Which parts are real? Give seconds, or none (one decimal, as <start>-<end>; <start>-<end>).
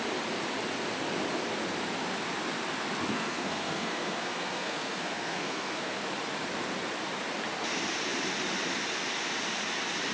0.0-3.1; 6.0-10.1